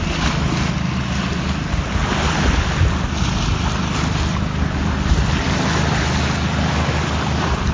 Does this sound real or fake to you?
real